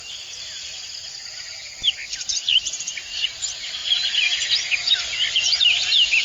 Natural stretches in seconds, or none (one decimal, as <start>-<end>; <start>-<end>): 0.0-1.0; 2.6-3.8